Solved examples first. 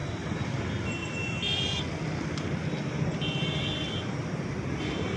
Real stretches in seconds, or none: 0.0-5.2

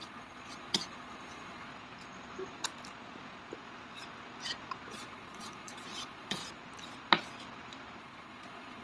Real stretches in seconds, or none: 1.7-4.9; 6.4-8.0

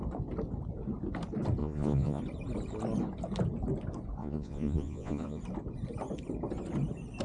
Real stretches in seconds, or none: 0.0-1.6; 2.2-4.2; 5.4-7.2

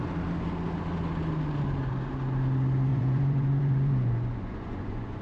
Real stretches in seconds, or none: 0.0-2.9

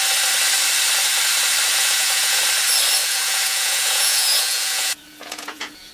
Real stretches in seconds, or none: 0.0-1.7; 2.4-3.0

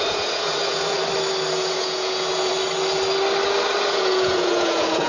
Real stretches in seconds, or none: 1.0-1.5; 2.5-3.9

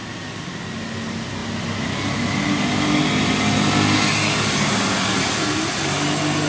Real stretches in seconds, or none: 0.0-6.5